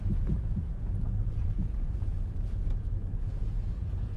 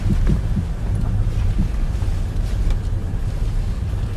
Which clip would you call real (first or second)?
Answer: second